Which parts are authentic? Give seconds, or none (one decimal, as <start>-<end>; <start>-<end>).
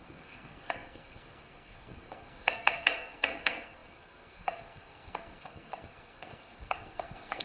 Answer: none